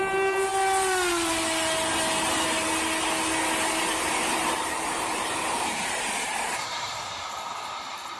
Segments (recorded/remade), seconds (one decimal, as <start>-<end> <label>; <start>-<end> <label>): 0.0-0.5 remade; 0.5-4.1 recorded; 4.1-8.2 remade